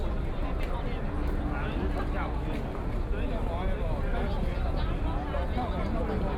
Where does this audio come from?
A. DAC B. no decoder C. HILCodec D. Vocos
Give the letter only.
B